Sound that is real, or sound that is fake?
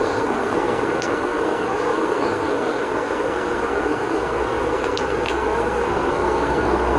fake